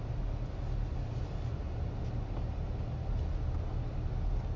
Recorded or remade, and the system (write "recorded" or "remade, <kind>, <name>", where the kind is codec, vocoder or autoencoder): recorded